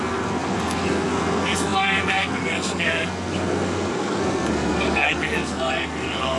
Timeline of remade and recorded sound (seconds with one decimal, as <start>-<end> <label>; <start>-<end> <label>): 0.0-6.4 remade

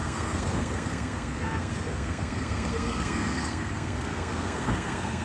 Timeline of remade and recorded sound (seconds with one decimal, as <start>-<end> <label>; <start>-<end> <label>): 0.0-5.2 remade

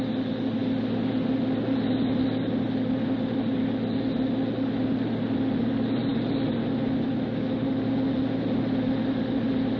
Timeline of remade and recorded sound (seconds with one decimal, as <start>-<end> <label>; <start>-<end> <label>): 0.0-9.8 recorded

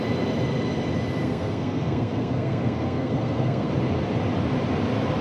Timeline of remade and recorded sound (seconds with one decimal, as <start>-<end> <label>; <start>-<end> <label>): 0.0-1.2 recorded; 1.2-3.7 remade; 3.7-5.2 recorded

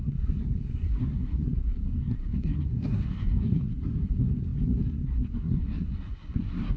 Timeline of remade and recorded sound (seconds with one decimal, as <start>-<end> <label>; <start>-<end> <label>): 0.0-6.8 remade

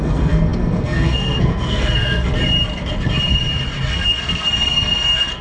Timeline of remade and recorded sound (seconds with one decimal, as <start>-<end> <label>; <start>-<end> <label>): 0.0-2.3 remade; 2.3-3.9 recorded; 3.9-5.4 remade

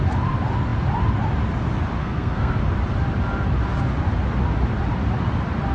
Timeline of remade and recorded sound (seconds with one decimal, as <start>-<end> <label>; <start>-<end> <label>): 0.0-2.0 recorded; 2.0-2.6 remade; 2.6-5.7 recorded